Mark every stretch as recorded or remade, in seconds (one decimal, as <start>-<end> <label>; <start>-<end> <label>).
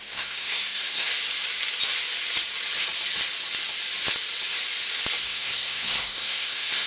0.0-1.1 remade; 1.1-5.2 recorded; 5.2-6.9 remade